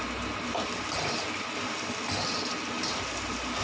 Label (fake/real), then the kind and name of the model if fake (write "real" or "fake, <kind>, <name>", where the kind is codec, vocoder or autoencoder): real